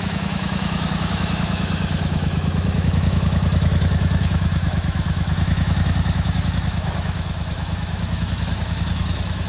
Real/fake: fake